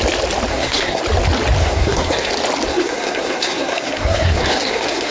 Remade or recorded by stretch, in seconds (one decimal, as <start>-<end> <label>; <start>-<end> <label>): 0.0-0.5 recorded; 0.5-1.0 remade; 1.0-1.6 recorded; 1.6-2.3 remade; 2.3-2.7 recorded; 2.7-5.1 remade

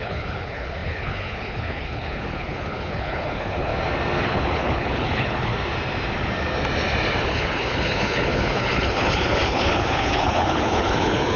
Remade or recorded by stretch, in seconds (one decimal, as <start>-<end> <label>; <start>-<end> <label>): 0.0-3.7 remade; 3.7-4.2 recorded; 4.2-5.5 remade; 5.5-7.2 recorded; 7.2-11.4 remade

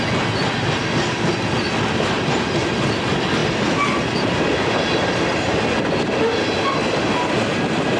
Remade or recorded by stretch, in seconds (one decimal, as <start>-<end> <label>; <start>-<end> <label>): 0.0-8.0 recorded

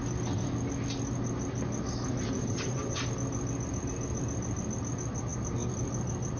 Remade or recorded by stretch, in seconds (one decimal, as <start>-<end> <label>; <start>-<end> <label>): 0.0-2.4 recorded; 2.4-3.0 remade; 3.0-6.4 recorded

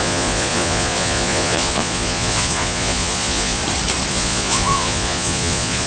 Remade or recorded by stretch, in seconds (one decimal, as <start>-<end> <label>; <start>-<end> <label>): 0.0-3.6 remade; 3.6-4.1 recorded; 4.1-5.9 remade

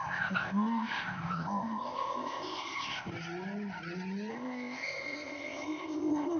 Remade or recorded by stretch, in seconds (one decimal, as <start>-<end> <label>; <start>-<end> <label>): 0.0-3.1 remade; 3.1-4.3 recorded; 4.3-6.4 remade

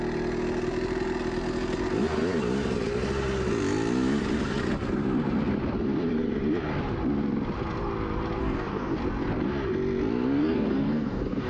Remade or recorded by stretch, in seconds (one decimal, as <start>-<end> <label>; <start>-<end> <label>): 0.0-8.4 recorded; 8.4-9.0 remade; 9.0-10.4 recorded; 10.4-11.5 remade

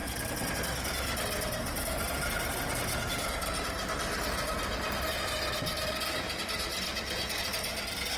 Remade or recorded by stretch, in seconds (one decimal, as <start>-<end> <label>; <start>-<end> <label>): 0.0-8.2 recorded